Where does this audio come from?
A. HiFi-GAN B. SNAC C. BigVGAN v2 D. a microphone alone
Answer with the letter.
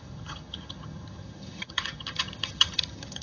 A